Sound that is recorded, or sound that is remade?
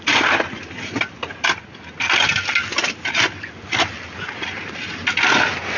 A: recorded